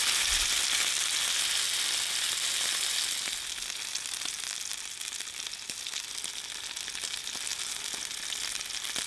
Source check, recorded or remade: recorded